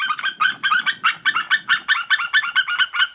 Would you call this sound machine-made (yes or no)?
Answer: no